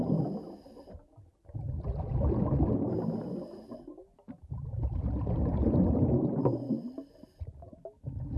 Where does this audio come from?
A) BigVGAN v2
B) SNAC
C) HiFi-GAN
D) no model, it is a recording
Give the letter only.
D